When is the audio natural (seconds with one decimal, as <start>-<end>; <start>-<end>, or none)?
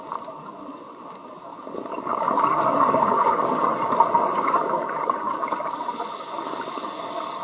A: 3.7-4.4